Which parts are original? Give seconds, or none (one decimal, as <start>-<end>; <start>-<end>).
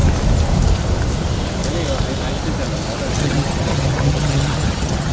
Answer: 0.0-3.1